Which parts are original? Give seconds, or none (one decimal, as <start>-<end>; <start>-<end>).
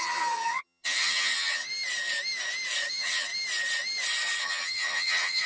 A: 1.7-2.9; 3.3-4.4